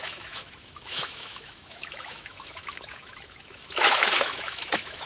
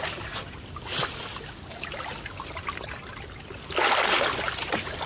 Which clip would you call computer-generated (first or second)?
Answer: first